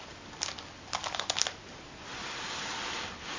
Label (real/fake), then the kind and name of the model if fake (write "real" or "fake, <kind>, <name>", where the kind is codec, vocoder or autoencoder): real